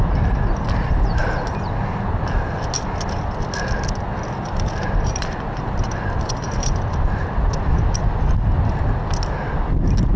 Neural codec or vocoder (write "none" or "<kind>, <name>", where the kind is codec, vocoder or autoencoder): none